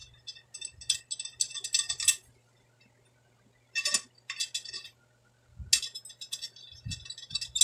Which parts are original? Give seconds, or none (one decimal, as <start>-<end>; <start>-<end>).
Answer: 0.0-7.6